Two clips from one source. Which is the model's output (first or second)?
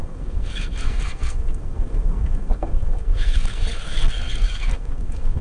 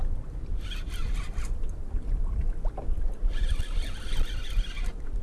first